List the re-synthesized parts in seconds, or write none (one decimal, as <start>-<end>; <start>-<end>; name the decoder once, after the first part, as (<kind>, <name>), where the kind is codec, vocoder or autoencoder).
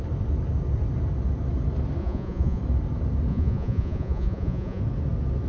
2.0-2.6 (vocoder, Vocos); 3.3-4.8